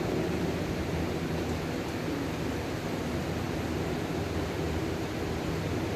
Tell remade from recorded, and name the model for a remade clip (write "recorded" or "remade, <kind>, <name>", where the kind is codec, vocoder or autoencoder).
recorded